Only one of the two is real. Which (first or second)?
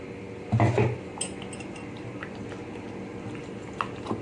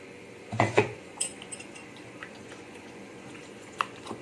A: first